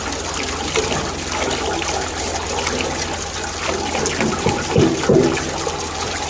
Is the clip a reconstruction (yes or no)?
no